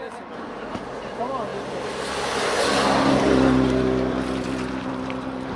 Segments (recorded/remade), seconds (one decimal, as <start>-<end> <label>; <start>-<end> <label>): 0.0-5.6 recorded